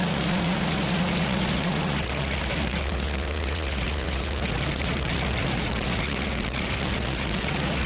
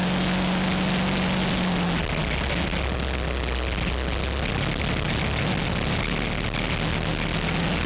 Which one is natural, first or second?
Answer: second